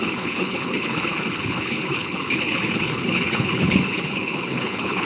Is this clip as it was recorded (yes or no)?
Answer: no